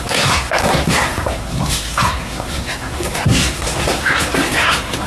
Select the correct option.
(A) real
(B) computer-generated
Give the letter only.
B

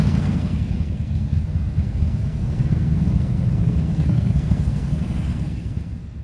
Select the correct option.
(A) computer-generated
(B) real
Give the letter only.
A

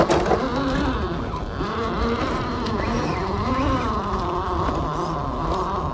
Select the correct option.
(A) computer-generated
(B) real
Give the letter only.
B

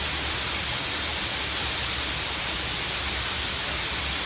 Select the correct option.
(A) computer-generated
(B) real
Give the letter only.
B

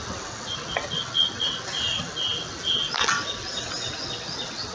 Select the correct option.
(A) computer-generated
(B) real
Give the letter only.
B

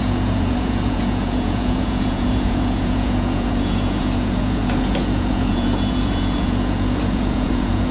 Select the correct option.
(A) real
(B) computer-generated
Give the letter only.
B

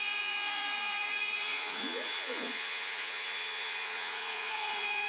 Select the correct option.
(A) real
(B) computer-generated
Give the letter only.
B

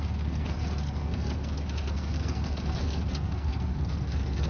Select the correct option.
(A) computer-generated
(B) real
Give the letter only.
A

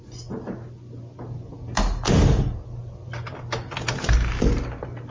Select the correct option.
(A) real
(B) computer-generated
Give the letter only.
A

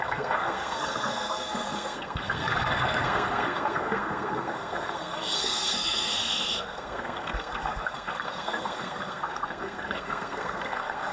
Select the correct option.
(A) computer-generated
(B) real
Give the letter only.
A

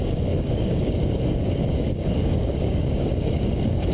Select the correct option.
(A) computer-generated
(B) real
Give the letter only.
A